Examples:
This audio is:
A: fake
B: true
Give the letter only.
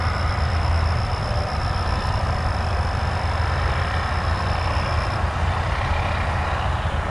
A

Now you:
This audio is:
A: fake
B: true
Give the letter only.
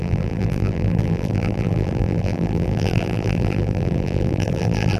A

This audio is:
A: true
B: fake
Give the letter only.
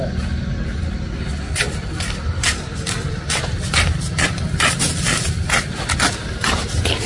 B